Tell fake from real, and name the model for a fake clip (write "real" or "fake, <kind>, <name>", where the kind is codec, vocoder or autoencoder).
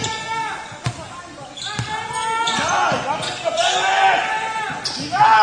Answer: real